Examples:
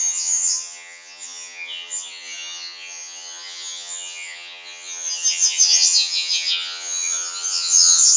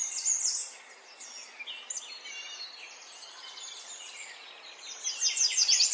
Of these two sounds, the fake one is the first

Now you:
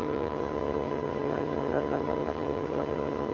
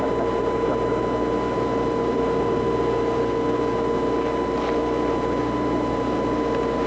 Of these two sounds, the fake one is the first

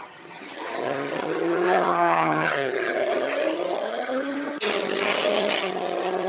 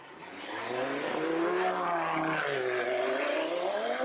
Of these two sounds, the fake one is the first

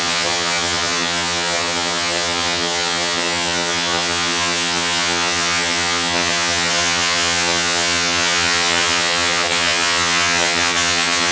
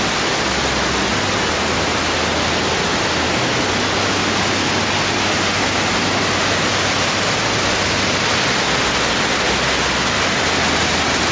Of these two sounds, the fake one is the first